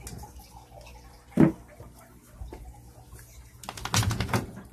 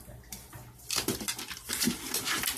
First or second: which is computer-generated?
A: second